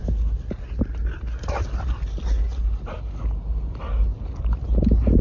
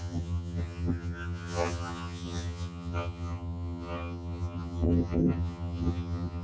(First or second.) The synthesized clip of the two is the second